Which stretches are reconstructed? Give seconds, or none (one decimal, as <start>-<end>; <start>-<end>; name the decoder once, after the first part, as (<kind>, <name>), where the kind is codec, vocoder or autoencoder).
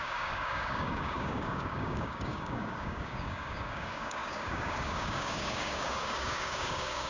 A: 0.0-7.1 (codec, DAC)